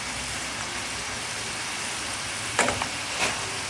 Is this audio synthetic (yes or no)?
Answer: no